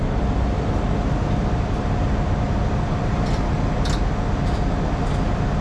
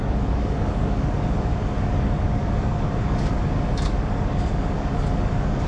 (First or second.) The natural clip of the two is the first